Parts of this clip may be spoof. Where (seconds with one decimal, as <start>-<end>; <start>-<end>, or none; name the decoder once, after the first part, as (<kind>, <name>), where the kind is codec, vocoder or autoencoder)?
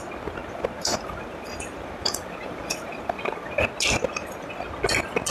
0.4-3.6 (vocoder, BigVGAN v2)